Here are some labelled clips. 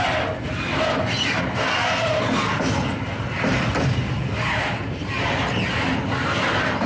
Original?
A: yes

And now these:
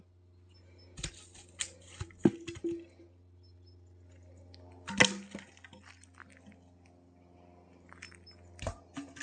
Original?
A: yes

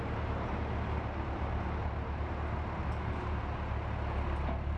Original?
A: yes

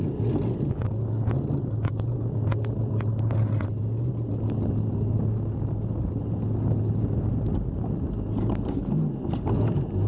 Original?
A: yes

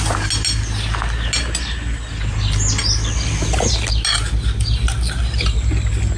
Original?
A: yes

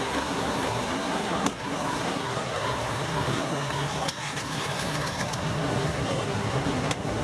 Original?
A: no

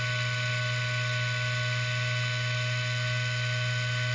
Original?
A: yes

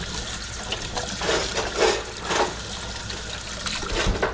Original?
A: yes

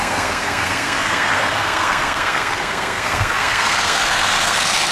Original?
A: no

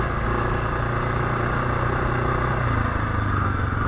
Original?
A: yes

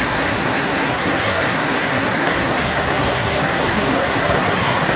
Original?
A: no